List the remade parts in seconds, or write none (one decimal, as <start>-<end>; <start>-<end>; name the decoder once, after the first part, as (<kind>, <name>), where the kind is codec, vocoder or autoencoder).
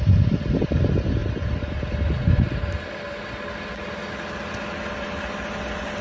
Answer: none